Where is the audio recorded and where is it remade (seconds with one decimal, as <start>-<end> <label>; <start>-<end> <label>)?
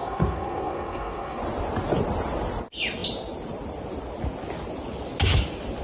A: 0.0-1.4 remade; 1.4-5.8 recorded